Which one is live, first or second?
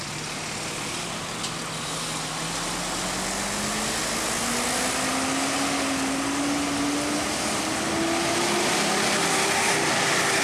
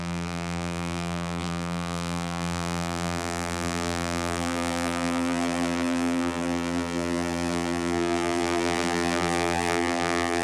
first